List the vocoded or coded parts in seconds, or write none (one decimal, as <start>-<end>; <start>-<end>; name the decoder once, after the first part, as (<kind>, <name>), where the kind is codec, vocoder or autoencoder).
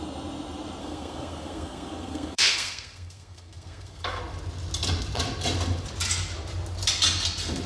0.8-4.2 (codec, SNAC)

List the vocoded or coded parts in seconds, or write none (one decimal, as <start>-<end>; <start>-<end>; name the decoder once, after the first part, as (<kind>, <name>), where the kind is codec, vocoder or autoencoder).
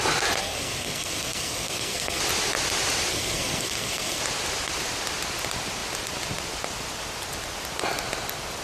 0.4-2.2 (codec, SNAC); 3.1-4.2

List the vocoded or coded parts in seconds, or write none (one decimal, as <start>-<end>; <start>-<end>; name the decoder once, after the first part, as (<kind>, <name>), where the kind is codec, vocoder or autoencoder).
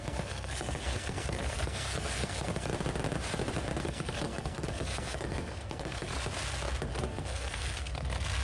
0.0-2.7 (codec, SNAC); 3.8-6.1; 6.9-8.4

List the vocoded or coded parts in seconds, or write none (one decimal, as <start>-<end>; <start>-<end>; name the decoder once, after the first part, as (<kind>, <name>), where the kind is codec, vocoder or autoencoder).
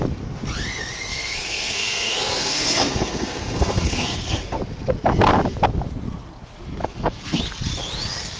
1.1-4.6 (codec, SNAC); 6.8-7.4